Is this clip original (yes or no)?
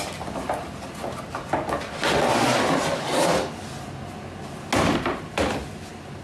yes